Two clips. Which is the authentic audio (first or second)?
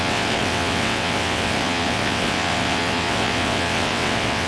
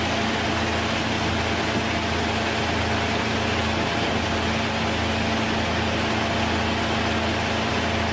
second